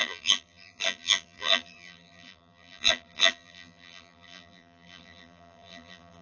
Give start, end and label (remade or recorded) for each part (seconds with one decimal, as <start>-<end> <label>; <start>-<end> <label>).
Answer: 0.0-6.2 remade